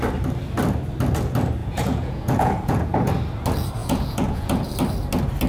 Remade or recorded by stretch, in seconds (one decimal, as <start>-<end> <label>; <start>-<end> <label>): 0.0-1.6 recorded; 1.6-3.1 remade; 3.1-3.8 recorded; 3.8-4.7 remade; 4.7-5.5 recorded